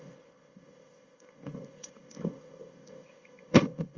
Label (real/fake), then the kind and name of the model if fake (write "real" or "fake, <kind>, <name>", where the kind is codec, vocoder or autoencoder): fake, codec, ZipCodec